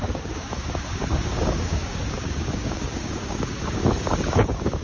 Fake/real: fake